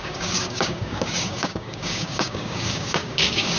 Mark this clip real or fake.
fake